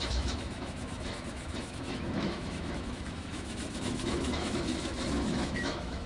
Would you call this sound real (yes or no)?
no